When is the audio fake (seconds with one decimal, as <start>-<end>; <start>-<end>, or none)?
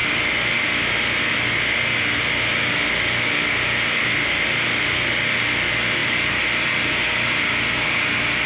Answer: none